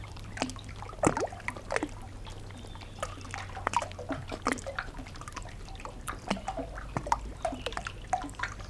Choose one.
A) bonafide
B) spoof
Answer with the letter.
A